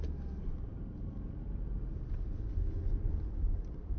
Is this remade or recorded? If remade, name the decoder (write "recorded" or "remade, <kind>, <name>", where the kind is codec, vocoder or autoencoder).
recorded